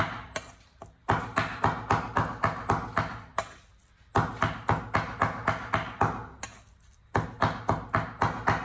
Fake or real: real